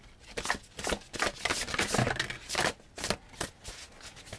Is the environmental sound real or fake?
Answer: real